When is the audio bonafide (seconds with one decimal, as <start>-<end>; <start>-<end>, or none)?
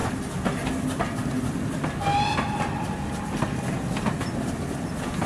0.0-5.3